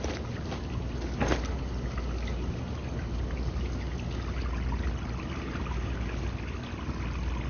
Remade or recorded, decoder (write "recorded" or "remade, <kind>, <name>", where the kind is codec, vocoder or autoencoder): recorded